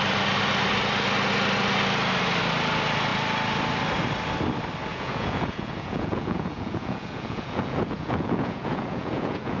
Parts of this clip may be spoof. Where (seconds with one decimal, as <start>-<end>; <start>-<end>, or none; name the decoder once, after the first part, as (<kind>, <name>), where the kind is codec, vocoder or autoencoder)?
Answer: 4.9-9.6 (vocoder, Vocos)